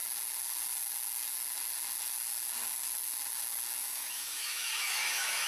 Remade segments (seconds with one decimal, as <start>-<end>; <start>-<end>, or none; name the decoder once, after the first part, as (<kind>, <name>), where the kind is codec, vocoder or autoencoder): 3.8-5.5 (autoencoder, DAC-VAE)